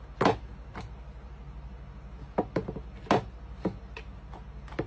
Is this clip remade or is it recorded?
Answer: recorded